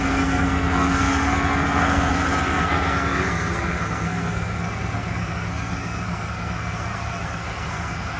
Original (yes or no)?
no